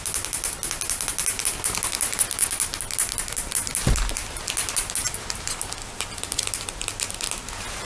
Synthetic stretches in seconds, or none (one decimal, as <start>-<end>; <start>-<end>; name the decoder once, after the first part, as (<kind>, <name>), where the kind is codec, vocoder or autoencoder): none

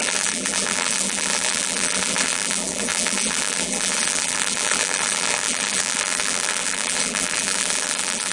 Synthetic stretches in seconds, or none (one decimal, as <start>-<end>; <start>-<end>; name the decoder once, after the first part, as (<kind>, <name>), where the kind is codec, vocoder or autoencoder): 0.0-8.3 (vocoder, BigVGAN v2)